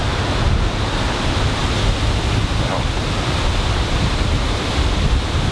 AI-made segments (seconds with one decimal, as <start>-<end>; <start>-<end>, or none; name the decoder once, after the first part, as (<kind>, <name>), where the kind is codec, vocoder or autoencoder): none